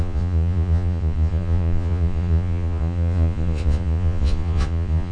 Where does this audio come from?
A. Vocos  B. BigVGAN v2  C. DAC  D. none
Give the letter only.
A